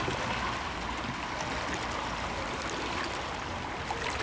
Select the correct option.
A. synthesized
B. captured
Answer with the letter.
B